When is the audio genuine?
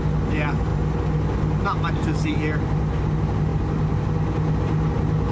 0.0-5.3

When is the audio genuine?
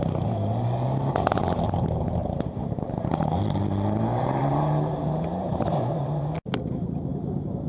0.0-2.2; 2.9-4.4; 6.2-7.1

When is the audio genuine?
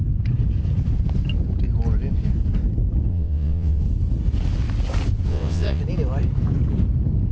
0.0-3.1; 3.8-5.3; 5.8-7.3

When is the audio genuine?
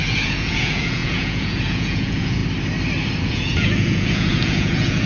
2.4-3.2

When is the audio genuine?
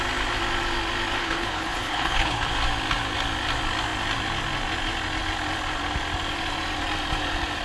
0.0-1.2; 2.5-7.6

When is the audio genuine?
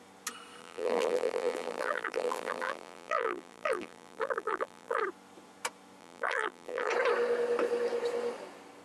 0.0-0.6; 5.0-6.0; 6.9-8.8